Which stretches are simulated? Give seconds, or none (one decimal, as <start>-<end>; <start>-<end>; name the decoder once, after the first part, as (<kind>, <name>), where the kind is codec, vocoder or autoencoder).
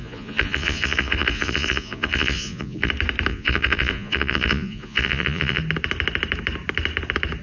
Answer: 0.0-2.9 (vocoder, Vocos); 3.3-5.6